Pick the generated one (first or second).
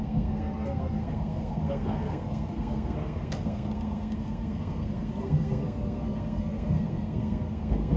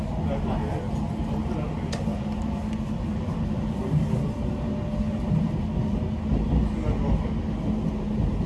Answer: first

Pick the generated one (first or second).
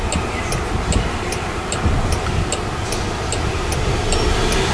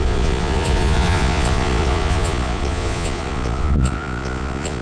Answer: second